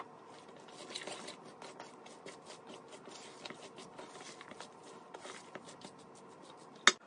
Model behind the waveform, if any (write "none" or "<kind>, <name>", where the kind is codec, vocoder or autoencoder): none